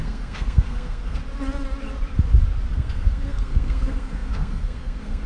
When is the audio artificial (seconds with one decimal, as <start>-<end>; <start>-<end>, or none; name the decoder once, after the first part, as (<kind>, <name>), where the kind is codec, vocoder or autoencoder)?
0.0-1.2 (codec, SNAC); 2.7-5.3